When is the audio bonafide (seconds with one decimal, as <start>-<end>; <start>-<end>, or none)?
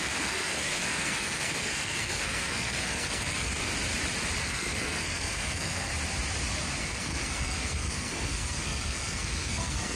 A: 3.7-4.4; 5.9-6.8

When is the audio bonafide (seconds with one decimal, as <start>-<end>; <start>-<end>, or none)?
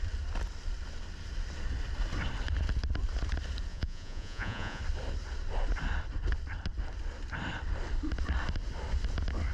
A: 0.0-3.7; 4.8-9.5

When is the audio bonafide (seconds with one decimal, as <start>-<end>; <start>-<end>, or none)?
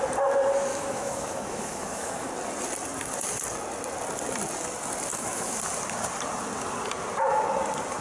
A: 0.0-0.7; 2.3-5.1; 5.6-8.0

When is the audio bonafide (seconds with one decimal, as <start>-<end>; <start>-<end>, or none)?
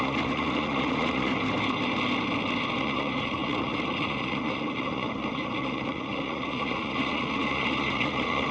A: 1.3-2.8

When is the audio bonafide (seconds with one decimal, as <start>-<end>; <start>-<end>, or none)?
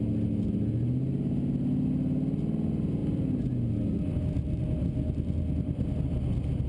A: 0.0-6.7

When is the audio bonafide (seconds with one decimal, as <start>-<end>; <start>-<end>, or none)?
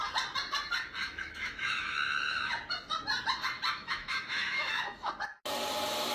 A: 0.0-1.0; 2.5-3.8; 5.1-6.1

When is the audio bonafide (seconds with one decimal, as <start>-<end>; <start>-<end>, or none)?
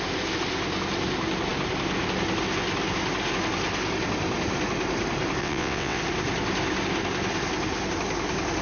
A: 0.0-5.4; 6.0-8.6